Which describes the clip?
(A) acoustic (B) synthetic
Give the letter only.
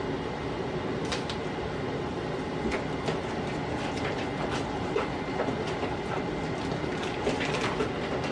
A